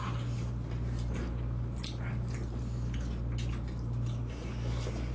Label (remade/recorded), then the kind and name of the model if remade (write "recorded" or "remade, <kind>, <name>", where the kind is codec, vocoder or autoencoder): recorded